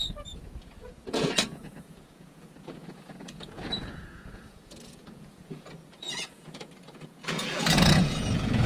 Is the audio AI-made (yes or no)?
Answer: yes